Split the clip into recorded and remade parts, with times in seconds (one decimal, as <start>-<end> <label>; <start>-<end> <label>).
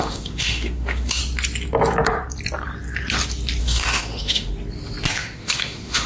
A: 0.0-1.2 remade; 1.2-3.6 recorded; 3.6-4.5 remade; 4.5-5.1 recorded; 5.1-6.1 remade